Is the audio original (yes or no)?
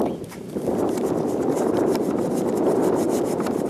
yes